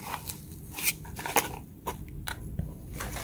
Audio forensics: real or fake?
real